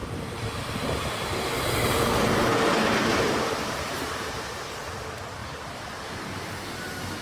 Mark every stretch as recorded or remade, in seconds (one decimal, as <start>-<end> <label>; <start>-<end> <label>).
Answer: 0.0-4.3 remade; 4.3-5.4 recorded; 5.4-6.1 remade; 6.1-7.2 recorded